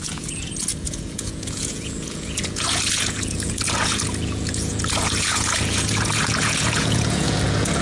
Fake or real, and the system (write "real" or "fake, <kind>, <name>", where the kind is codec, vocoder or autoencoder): fake, vocoder, Vocos